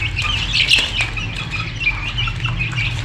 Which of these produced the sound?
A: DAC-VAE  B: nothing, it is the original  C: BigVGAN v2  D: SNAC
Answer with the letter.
B